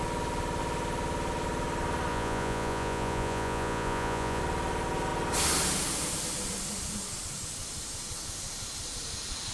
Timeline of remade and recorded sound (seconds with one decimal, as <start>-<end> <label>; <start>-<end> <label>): 0.0-2.1 recorded; 2.1-4.4 remade; 4.4-9.5 recorded